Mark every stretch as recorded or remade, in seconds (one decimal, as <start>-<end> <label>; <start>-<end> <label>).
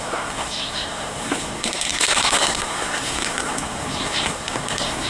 0.0-5.1 remade